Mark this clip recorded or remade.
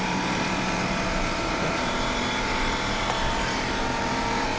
remade